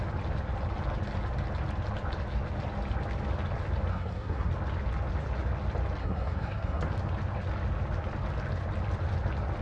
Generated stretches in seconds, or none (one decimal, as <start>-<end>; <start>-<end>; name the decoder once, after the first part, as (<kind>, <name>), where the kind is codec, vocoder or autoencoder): 3.9-4.5 (codec, SNAC); 6.0-6.8